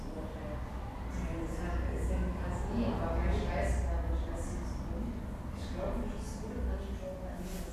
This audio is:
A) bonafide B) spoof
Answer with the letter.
A